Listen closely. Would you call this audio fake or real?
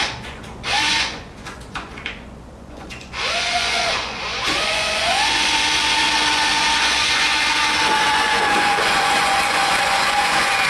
fake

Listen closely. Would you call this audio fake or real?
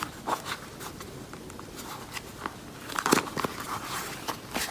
real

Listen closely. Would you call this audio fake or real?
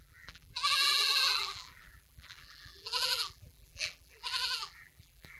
fake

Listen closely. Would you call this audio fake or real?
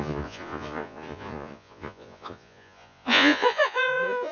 fake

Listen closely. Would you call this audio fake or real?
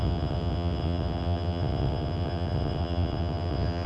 fake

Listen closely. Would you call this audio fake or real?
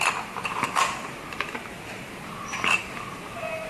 real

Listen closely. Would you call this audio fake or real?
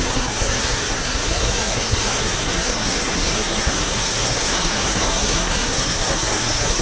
fake